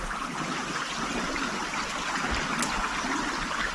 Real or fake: real